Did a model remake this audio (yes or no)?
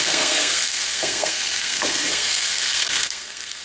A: yes